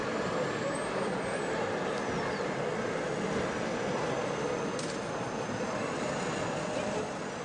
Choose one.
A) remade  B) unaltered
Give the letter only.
B